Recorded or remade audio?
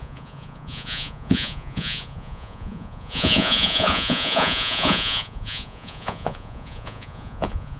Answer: remade